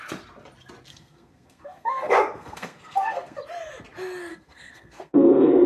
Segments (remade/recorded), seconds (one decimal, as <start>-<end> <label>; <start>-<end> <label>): 0.0-0.9 recorded; 0.9-3.4 remade; 3.4-4.3 recorded; 4.3-5.7 remade